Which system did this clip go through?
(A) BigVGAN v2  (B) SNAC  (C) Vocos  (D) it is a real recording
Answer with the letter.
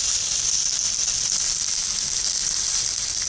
D